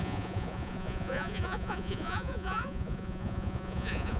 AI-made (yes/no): yes